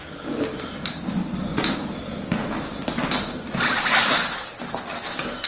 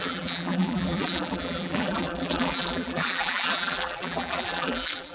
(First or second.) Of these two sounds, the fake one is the second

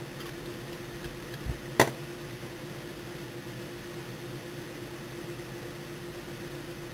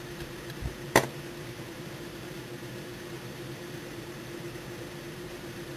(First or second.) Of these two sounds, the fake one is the second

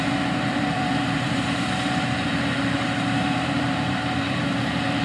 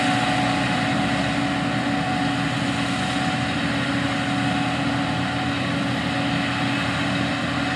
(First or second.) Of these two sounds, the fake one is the first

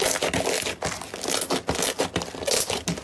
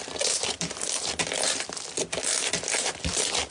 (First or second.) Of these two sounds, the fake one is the second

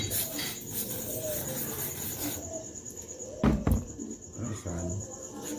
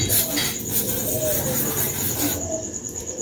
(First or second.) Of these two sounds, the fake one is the first